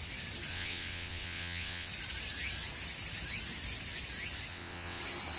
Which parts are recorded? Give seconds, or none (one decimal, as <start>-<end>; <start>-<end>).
0.0-0.5; 1.9-4.5; 5.0-5.4